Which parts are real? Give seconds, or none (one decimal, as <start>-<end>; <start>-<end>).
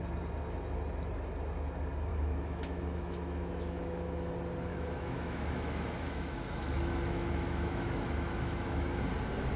0.0-2.1; 4.3-4.7; 9.0-9.6